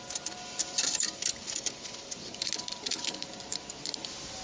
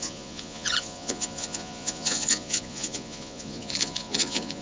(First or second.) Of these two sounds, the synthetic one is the second